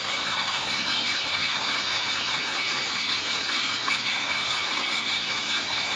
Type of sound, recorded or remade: remade